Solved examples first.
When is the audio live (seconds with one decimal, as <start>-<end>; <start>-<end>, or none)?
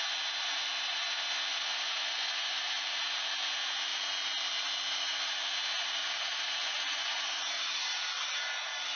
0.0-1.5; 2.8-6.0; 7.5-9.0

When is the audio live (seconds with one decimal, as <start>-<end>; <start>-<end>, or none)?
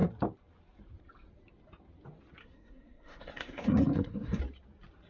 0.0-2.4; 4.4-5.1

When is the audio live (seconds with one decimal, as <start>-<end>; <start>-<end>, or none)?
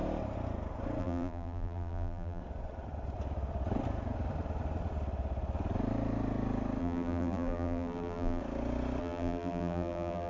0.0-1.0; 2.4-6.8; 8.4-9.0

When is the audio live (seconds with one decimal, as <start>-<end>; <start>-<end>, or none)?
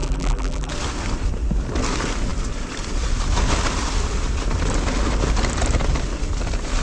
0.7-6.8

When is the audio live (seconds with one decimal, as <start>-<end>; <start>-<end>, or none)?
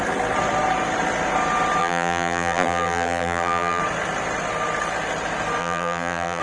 0.0-1.8; 3.8-5.6